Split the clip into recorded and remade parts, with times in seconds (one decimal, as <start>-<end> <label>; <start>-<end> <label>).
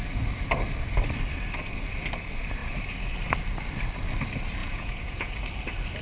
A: 0.0-4.6 recorded; 4.6-5.3 remade; 5.3-6.0 recorded